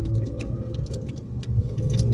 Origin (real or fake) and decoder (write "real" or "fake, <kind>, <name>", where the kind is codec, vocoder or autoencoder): fake, codec, SNAC